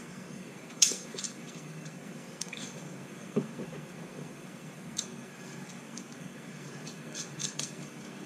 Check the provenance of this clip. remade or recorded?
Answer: remade